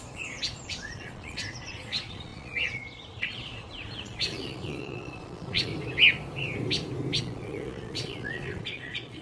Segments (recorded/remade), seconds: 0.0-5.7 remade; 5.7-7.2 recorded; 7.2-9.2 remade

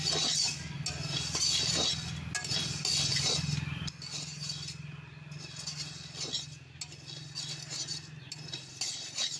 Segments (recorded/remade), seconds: 0.0-9.4 recorded

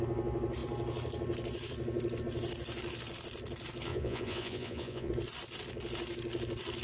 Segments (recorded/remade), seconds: 0.0-3.9 recorded; 3.9-5.1 remade; 5.1-6.8 recorded

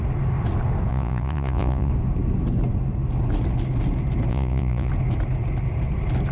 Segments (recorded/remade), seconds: 0.0-0.9 recorded; 0.9-1.9 remade; 1.9-4.3 recorded; 4.3-4.9 remade; 4.9-6.3 recorded

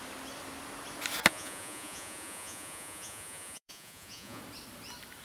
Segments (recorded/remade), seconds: 0.0-1.3 recorded; 1.3-4.4 remade; 4.4-5.2 recorded

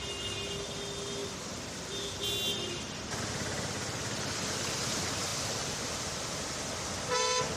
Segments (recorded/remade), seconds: 0.0-7.6 recorded

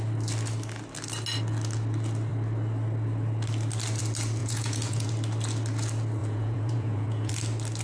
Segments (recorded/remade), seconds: 0.0-4.4 recorded; 4.4-5.1 remade; 5.1-6.2 recorded; 6.2-7.3 remade; 7.3-7.8 recorded